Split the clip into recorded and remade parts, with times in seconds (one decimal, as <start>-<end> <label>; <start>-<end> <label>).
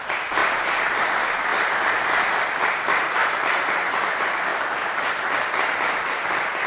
0.0-1.5 remade; 1.5-2.3 recorded; 2.3-3.2 remade; 3.2-3.9 recorded; 3.9-4.5 remade; 4.5-5.5 recorded; 5.5-6.7 remade